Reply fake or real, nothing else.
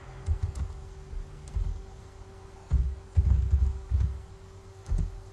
fake